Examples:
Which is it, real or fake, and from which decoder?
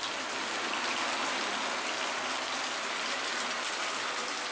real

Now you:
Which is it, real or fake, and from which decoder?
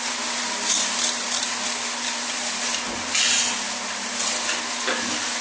real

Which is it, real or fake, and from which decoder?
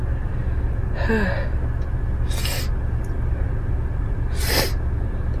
real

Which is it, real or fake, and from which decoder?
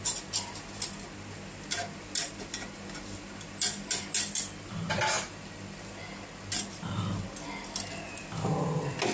real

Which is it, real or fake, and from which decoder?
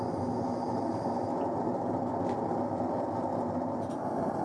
real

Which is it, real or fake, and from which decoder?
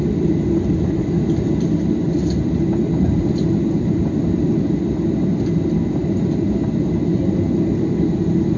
real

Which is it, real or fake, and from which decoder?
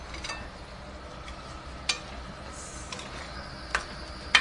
real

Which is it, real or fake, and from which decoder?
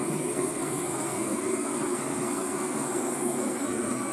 fake, codec, SNAC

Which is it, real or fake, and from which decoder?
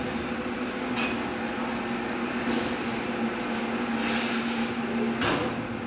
real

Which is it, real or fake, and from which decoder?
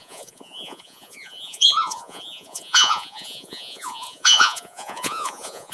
fake, vocoder, Vocos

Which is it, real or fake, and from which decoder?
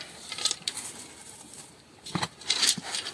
fake, vocoder, BigVGAN v2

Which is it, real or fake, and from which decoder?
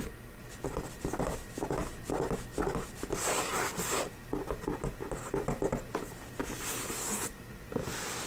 real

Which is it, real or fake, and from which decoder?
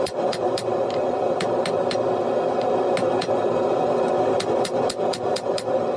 real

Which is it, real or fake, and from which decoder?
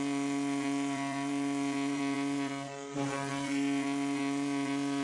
fake, vocoder, Vocos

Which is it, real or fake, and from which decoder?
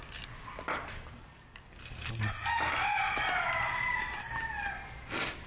real